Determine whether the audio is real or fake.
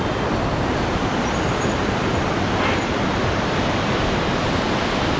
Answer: real